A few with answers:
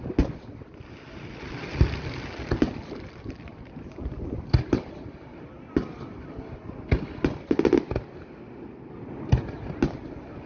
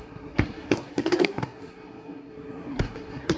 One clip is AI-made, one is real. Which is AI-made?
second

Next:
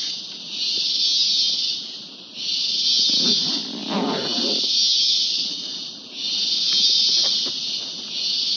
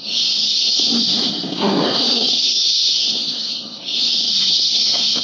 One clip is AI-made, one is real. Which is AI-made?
second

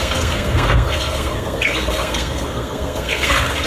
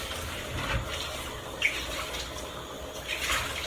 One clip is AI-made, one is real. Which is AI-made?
first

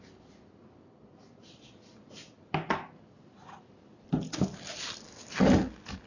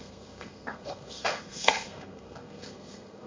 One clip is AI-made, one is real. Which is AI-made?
second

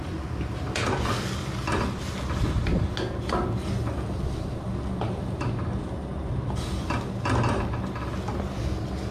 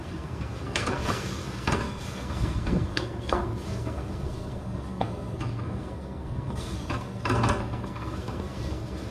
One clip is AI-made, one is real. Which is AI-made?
second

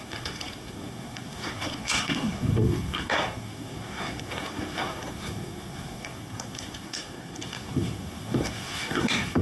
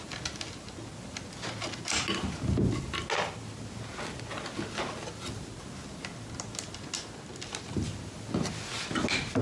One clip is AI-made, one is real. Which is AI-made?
first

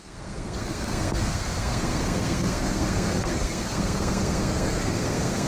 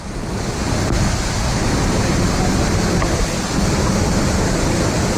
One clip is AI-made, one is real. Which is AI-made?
first